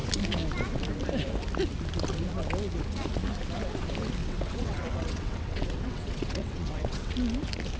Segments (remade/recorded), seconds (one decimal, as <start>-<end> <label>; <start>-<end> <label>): 0.0-4.2 recorded; 4.2-7.1 remade; 7.1-7.8 recorded